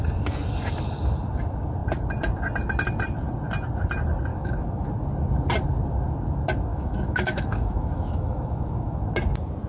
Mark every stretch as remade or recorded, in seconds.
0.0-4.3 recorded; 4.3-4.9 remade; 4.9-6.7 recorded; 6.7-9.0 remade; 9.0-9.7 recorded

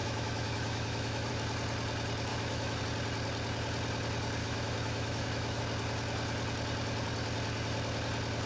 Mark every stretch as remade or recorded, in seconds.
0.0-1.3 remade; 1.3-2.3 recorded; 2.3-2.8 remade; 2.8-4.4 recorded; 4.4-5.6 remade; 5.6-8.5 recorded

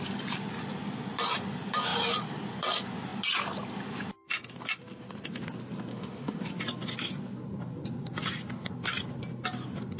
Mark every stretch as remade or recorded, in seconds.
0.0-5.9 recorded; 5.9-6.5 remade; 6.5-10.0 recorded

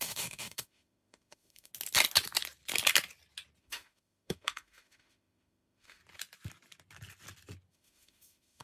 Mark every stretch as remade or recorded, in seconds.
0.0-1.7 remade; 1.7-3.6 recorded; 3.6-6.0 remade; 6.0-7.7 recorded; 7.7-8.6 remade

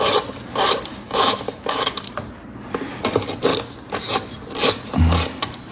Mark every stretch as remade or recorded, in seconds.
0.0-0.9 recorded; 0.9-2.1 remade; 2.1-5.7 recorded

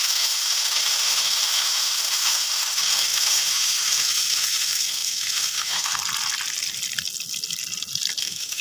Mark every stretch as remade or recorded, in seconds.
0.0-6.0 remade; 6.0-8.2 recorded; 8.2-8.6 remade

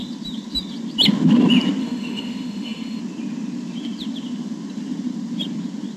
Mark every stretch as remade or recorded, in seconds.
0.0-1.8 recorded; 1.8-3.0 remade; 3.0-6.0 recorded